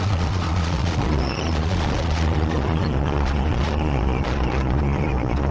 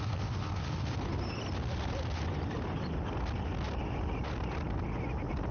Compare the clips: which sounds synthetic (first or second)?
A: first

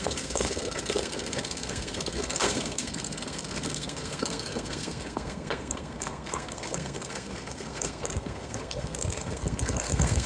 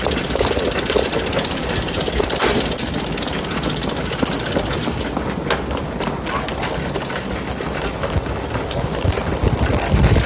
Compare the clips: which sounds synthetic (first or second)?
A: first